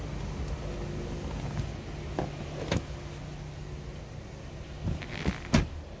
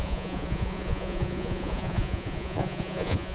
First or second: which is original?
first